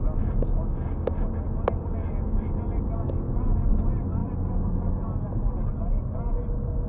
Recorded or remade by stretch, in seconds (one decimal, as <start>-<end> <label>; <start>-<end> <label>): 0.0-6.9 recorded